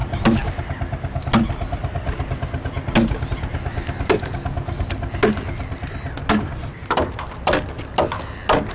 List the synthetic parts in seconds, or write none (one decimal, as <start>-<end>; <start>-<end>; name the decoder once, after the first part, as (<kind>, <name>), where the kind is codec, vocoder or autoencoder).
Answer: none